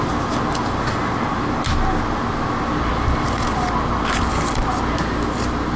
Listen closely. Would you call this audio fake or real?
real